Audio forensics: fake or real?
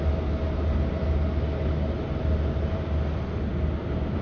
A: real